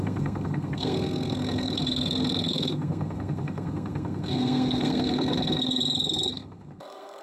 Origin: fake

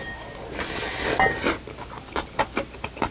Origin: real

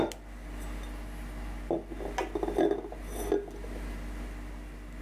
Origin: real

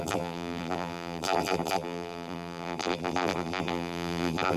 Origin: fake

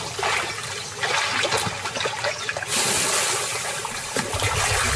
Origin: real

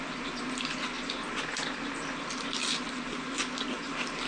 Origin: real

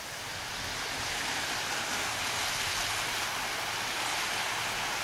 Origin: real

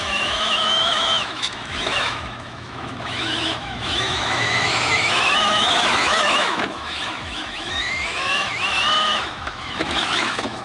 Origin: fake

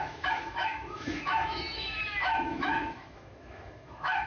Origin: fake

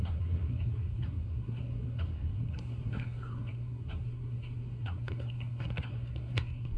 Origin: fake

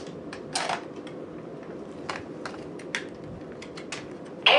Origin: real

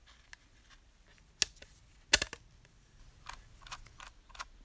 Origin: real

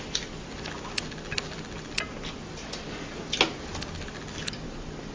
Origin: real